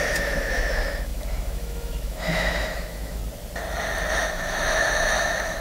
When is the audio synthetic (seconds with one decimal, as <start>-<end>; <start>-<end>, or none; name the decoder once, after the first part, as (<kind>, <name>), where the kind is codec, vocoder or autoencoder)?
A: 0.0-3.2 (autoencoder, DAC-VAE); 4.2-5.6